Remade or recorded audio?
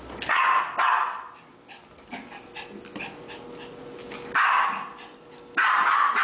recorded